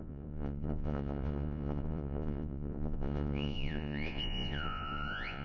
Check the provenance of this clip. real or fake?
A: fake